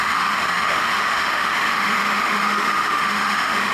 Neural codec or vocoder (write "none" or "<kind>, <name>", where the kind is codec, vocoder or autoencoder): autoencoder, DAC-VAE